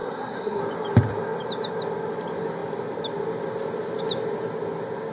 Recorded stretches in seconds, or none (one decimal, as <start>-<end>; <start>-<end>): 0.6-5.1